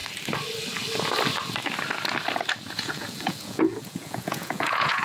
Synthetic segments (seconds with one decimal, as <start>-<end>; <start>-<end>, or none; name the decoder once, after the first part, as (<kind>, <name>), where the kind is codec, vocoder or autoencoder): 2.7-5.0 (vocoder, Vocos)